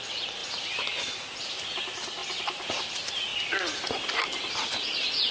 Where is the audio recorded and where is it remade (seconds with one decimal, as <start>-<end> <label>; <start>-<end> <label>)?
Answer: 0.0-5.3 recorded